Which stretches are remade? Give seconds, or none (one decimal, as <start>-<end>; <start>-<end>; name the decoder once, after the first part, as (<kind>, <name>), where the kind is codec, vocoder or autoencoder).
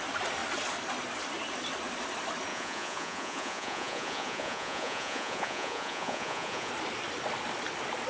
2.5-6.7 (vocoder, Vocos)